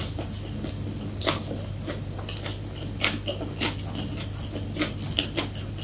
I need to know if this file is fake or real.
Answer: real